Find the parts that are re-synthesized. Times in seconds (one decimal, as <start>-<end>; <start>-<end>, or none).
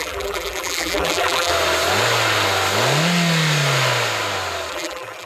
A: 0.0-1.5; 4.7-5.3